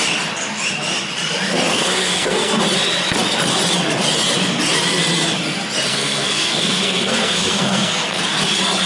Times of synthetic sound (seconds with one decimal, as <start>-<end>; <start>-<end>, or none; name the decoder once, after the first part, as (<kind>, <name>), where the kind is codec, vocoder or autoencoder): 1.7-2.6 (codec, SNAC); 5.9-8.2